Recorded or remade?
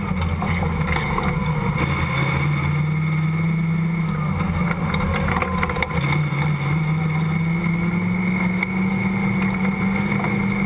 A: recorded